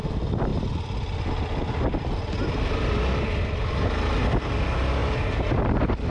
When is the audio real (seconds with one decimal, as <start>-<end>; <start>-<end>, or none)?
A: 0.0-5.0; 5.6-6.1